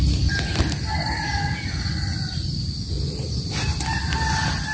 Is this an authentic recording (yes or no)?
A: yes